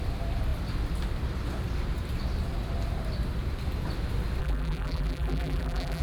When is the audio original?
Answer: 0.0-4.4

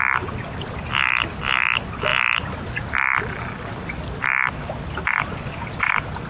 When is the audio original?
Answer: 0.0-6.3

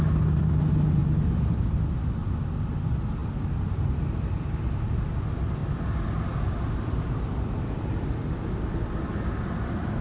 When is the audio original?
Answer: 0.0-10.0

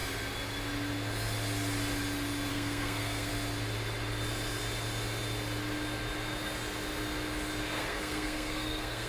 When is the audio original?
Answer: 0.0-2.5; 3.3-7.8

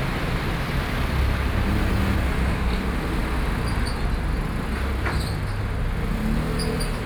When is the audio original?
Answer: 0.0-7.1

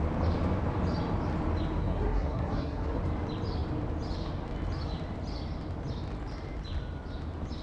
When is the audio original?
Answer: 0.0-1.8; 3.0-7.6

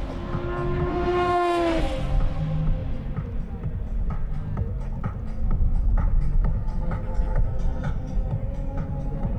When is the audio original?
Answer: 0.0-0.9; 1.8-9.4

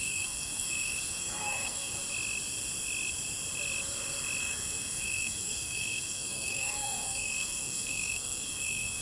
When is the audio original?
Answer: 2.0-4.4